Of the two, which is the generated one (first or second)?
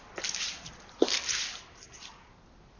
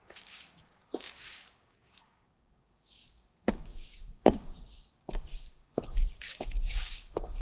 second